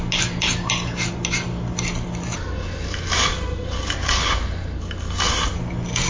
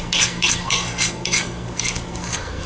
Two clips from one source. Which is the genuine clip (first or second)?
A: first